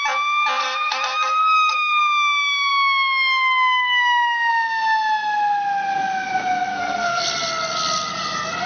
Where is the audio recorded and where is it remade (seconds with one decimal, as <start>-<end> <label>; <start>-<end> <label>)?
0.0-0.6 recorded; 0.6-2.0 remade; 2.0-6.7 recorded; 6.7-7.2 remade; 7.2-8.7 recorded